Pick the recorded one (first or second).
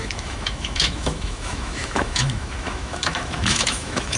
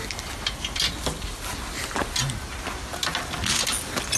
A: second